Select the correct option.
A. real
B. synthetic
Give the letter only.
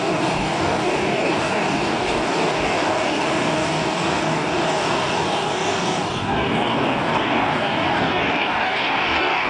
B